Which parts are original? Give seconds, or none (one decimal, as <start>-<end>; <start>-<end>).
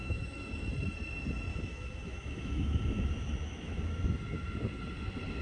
0.7-1.5; 4.2-5.4